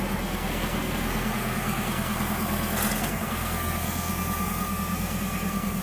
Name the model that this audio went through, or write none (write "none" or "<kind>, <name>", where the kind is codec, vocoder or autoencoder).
codec, SNAC